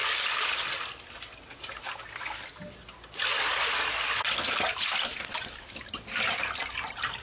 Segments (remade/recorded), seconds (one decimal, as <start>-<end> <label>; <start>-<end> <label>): 0.0-7.2 recorded